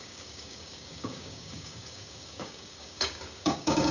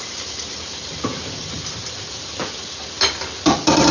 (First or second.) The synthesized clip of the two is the first